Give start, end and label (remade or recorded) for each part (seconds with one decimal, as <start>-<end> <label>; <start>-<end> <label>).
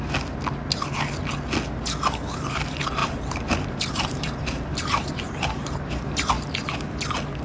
0.0-3.0 recorded; 3.0-6.3 remade; 6.3-7.4 recorded